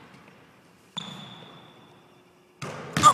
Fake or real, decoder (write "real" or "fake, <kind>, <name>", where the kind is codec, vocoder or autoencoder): real